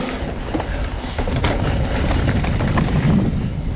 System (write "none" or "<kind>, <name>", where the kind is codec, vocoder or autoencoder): none